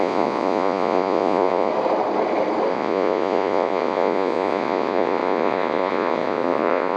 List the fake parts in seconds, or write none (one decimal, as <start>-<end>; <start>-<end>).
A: 0.0-1.7; 2.7-7.0